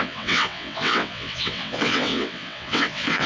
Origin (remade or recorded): remade